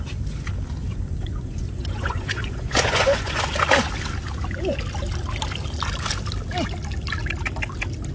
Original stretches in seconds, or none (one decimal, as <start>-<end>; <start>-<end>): 0.0-0.8; 3.4-8.1